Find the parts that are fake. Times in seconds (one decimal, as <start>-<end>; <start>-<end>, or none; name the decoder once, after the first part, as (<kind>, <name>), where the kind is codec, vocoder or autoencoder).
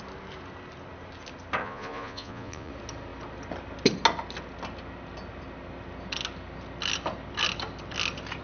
1.6-2.7 (vocoder, Vocos)